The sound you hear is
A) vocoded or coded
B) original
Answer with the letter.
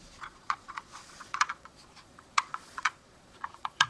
A